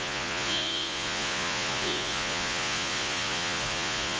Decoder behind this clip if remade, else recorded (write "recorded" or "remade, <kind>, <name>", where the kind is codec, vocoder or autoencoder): remade, vocoder, Vocos